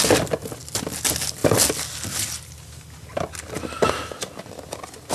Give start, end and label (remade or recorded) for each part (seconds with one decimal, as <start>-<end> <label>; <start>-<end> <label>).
0.0-5.1 recorded